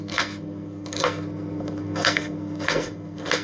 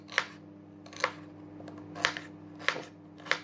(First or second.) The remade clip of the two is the first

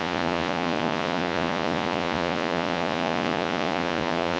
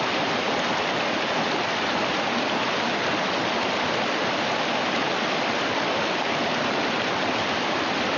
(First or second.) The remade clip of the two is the first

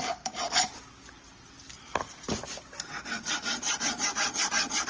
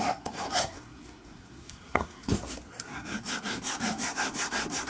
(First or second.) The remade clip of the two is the second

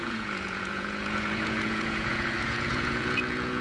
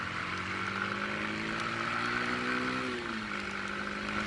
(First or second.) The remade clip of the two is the first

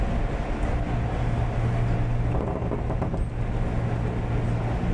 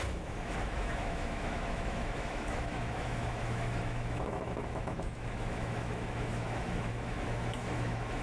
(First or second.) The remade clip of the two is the second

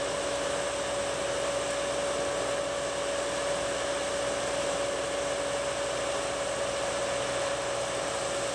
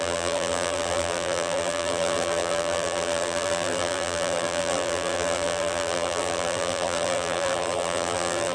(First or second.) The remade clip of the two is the second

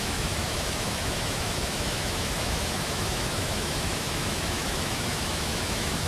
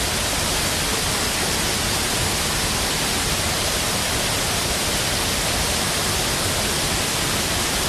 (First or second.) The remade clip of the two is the first